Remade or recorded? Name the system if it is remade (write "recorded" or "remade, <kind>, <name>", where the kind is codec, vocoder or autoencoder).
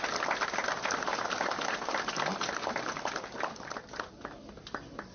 recorded